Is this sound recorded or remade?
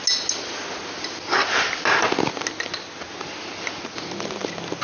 recorded